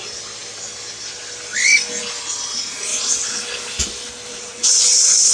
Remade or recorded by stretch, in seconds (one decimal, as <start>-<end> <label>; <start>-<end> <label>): 0.0-4.3 recorded; 4.3-5.3 remade